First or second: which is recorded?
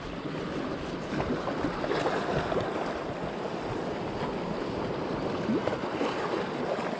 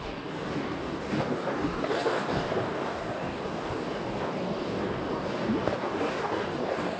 first